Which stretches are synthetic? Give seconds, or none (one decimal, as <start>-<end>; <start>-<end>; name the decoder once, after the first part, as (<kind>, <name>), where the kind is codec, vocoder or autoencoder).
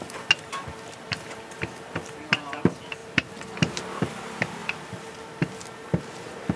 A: 3.0-4.0 (vocoder, BigVGAN v2); 4.6-5.5